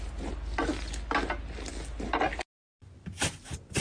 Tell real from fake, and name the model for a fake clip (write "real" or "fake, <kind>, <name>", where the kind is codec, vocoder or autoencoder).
real